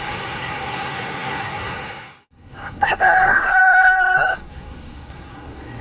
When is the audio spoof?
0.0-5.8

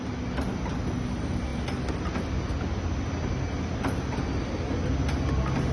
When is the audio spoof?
none

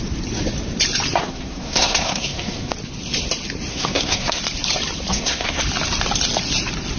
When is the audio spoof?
1.2-2.7; 3.7-4.4; 5.1-5.6

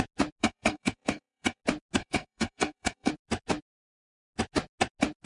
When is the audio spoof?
0.4-1.6; 2.0-3.1

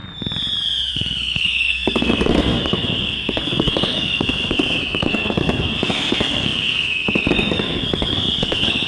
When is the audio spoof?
0.9-8.9

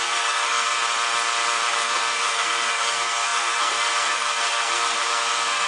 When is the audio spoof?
0.0-0.8; 1.7-5.7

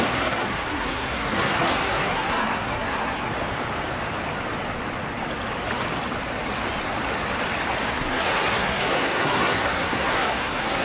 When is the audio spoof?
0.0-3.3; 7.9-10.8

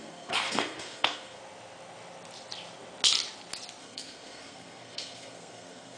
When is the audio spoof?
0.0-1.4; 3.8-6.0